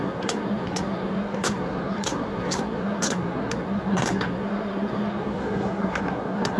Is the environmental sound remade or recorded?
remade